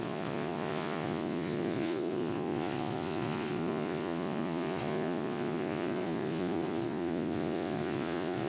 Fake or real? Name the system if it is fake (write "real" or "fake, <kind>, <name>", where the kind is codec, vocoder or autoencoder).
fake, vocoder, Vocos